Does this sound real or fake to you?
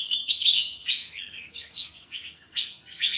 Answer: fake